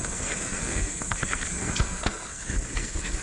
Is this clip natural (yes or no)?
no